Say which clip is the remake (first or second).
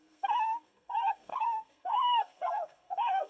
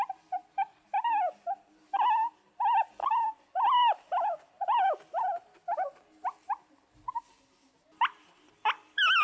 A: first